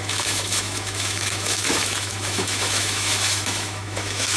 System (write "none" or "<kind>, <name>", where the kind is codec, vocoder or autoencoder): autoencoder, DAC-VAE